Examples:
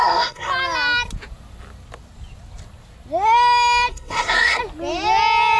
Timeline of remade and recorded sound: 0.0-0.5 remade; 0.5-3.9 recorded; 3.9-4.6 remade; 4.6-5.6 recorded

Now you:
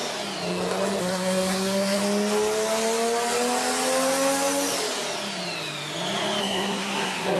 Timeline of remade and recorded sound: 0.0-1.0 recorded; 1.0-2.0 remade; 2.0-6.4 recorded; 6.4-7.4 remade

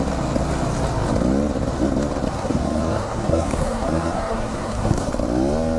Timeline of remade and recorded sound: 0.0-2.3 recorded; 2.3-5.1 remade; 5.1-5.8 recorded

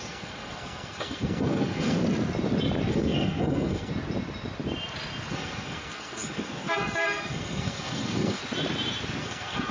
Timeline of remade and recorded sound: 0.0-2.0 remade; 2.0-2.9 recorded; 2.9-3.9 remade; 3.9-5.3 recorded; 5.3-8.4 remade; 8.4-9.2 recorded; 9.2-9.7 remade

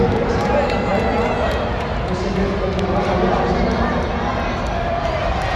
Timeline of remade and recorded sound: 0.0-5.6 recorded